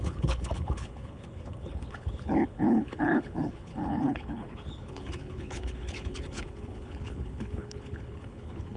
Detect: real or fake fake